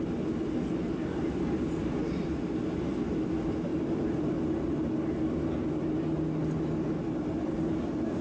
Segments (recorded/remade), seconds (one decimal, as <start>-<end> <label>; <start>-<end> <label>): 0.0-8.2 recorded

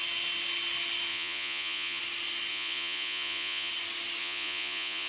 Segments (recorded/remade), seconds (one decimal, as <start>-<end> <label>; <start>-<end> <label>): 0.0-1.1 recorded; 1.1-2.0 remade; 2.0-2.5 recorded; 2.5-3.7 remade; 3.7-4.2 recorded; 4.2-5.1 remade

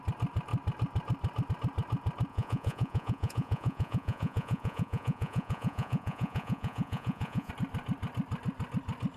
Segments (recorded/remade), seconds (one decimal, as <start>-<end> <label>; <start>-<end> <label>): 0.0-2.3 recorded; 2.3-7.5 remade; 7.5-9.2 recorded

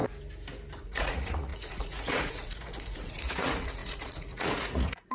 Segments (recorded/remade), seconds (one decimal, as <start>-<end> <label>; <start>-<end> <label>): 0.0-0.8 recorded; 0.8-5.1 remade

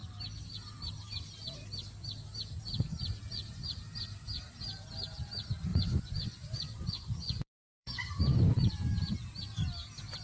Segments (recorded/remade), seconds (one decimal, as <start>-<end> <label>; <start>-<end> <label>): 0.0-5.7 recorded; 5.7-9.1 remade; 9.1-10.2 recorded

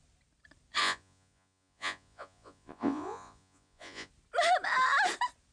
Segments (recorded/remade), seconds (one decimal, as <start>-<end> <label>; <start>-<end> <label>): 0.0-0.8 recorded; 0.8-4.1 remade; 4.1-5.5 recorded

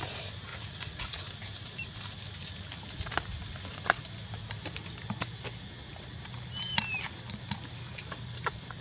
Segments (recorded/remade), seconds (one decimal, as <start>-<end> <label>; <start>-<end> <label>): 0.0-0.5 recorded; 0.5-1.3 remade; 1.3-8.8 recorded

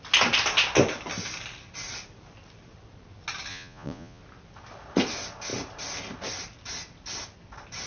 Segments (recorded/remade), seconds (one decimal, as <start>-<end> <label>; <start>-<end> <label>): 0.0-3.5 recorded; 3.5-4.2 remade; 4.2-7.9 recorded